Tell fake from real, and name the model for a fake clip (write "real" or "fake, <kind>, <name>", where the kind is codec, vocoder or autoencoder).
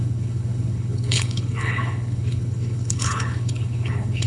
fake, codec, HILCodec